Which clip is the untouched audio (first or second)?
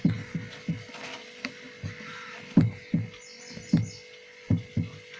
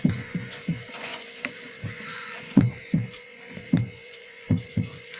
first